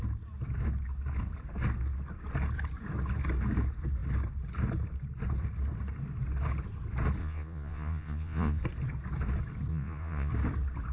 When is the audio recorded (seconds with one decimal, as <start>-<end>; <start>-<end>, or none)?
0.0-7.2; 8.6-9.7; 10.3-10.9